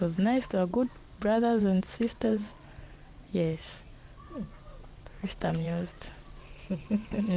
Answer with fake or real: fake